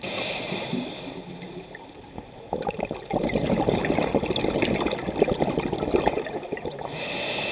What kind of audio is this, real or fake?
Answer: real